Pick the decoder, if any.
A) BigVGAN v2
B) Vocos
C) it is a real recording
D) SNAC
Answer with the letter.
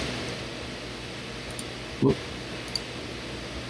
C